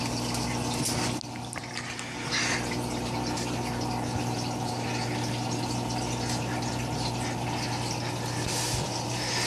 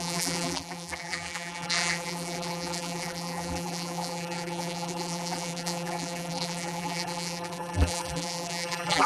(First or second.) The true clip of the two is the first